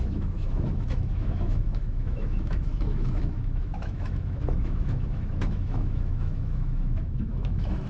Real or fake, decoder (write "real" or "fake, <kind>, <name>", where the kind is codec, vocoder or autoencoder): fake, autoencoder, DAC-VAE